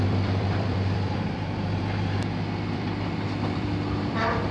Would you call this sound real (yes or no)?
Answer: no